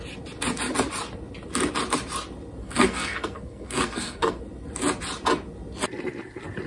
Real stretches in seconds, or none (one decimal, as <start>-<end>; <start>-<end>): 0.0-2.6; 4.4-6.7